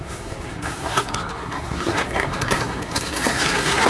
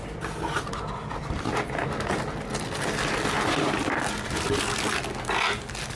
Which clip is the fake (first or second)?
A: first